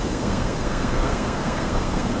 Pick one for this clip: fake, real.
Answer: fake